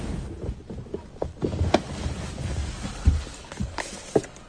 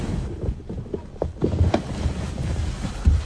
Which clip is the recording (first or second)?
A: first